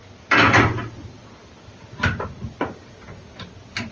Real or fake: real